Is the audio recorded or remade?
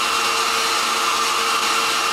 recorded